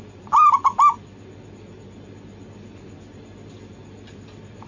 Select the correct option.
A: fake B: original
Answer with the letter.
B